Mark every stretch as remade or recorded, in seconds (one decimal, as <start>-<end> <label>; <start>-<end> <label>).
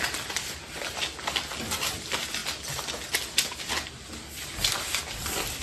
0.0-5.6 recorded